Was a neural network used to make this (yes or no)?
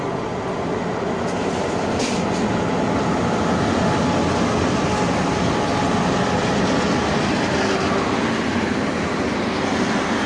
no